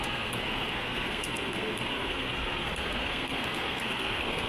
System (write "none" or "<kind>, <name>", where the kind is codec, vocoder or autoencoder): codec, SNAC